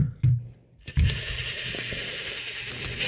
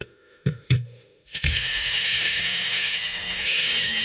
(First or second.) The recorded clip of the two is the first